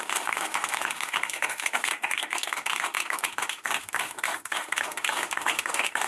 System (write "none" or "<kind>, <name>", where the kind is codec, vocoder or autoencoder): autoencoder, DAC-VAE